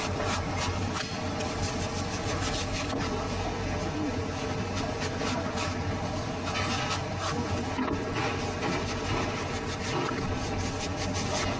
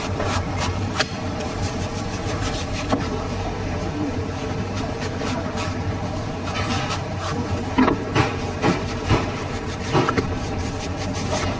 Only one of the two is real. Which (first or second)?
first